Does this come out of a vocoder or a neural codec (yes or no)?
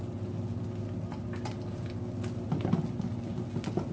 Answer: no